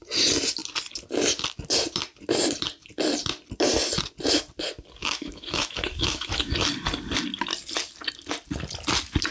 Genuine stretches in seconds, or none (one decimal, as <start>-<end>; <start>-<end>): 0.0-5.0; 6.5-9.3